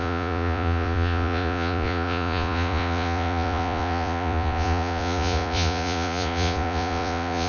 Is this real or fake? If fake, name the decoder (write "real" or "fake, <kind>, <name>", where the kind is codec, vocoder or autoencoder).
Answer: fake, vocoder, Vocos